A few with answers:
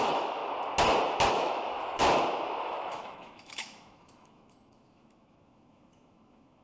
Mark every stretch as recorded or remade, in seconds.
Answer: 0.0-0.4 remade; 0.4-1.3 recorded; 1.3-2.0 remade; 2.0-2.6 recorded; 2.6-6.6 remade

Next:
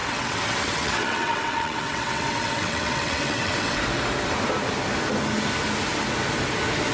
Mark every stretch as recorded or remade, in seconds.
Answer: 0.0-3.8 remade; 3.8-6.9 recorded

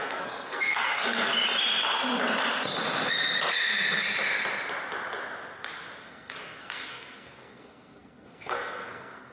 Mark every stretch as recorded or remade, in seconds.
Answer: 0.0-1.3 remade; 1.3-6.1 recorded; 6.1-9.3 remade

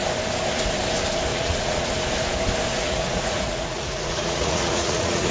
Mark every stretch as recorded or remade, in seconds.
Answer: 0.0-1.3 recorded; 1.3-1.9 remade; 1.9-2.7 recorded; 2.7-5.3 remade

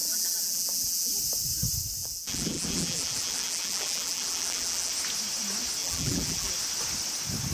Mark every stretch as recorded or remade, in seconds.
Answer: 0.0-1.1 remade; 1.1-2.0 recorded; 2.0-4.9 remade; 4.9-5.8 recorded; 5.8-6.5 remade; 6.5-7.5 recorded

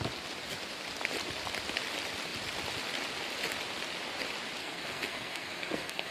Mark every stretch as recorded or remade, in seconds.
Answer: 0.0-4.6 recorded; 4.6-6.1 remade